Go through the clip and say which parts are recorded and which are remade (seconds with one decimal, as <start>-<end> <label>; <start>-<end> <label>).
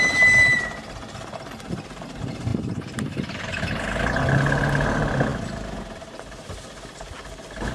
0.0-7.7 recorded